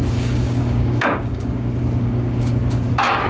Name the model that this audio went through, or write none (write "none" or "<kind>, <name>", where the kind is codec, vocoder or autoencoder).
codec, DAC